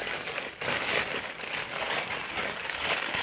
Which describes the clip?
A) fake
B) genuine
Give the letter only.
A